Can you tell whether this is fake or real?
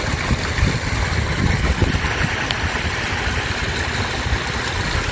real